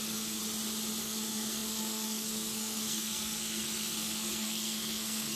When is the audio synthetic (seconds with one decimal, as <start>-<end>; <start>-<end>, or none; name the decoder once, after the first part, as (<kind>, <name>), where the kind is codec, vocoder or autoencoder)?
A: 0.0-0.4 (codec, SNAC); 1.0-5.4